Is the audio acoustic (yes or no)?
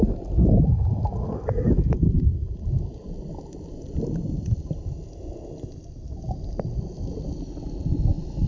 yes